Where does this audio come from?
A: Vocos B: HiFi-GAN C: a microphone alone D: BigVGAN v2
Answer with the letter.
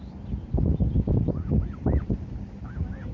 C